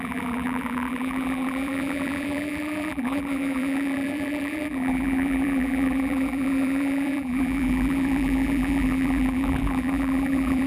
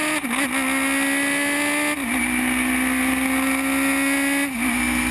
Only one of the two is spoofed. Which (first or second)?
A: first